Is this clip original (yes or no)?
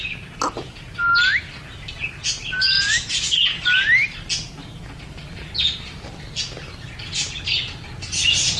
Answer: yes